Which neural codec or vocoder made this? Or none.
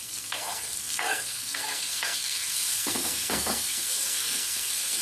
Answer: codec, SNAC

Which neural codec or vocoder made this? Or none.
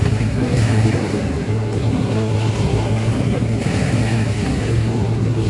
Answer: codec, SNAC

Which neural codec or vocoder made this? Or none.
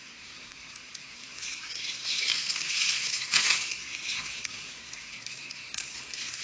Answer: codec, SNAC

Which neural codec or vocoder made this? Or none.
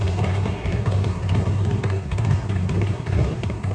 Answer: codec, SNAC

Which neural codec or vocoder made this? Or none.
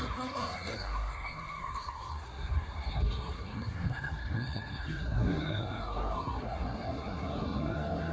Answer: codec, SNAC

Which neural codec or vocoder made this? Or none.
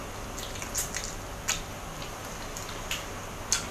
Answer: none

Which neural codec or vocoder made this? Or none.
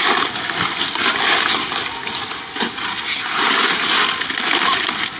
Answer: none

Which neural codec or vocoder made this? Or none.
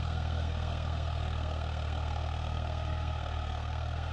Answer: codec, SNAC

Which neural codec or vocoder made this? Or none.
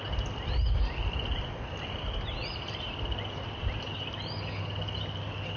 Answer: none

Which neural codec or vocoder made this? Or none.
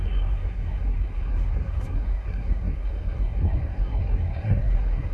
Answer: codec, SNAC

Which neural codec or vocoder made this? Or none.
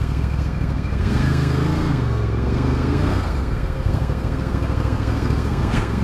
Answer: codec, SNAC